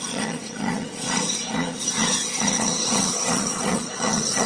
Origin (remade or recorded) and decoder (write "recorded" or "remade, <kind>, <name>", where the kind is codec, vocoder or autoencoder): remade, vocoder, Vocos